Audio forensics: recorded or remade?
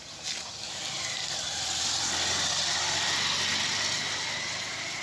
recorded